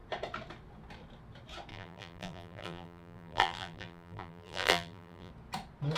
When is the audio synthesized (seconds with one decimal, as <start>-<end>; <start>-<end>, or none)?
1.7-5.3